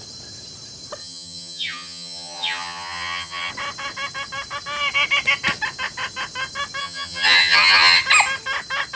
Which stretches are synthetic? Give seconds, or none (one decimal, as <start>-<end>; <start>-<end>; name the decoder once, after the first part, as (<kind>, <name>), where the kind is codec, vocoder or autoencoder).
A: 1.0-3.5 (vocoder, HiFi-GAN); 6.8-8.0